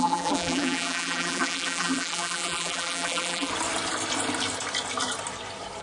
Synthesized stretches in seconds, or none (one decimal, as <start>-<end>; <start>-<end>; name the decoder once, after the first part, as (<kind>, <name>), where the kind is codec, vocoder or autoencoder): 0.0-3.5 (vocoder, BigVGAN v2)